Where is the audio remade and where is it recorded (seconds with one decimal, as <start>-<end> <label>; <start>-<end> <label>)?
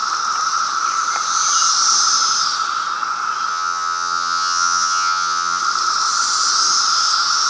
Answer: 0.0-3.5 recorded; 3.5-5.6 remade; 5.6-7.5 recorded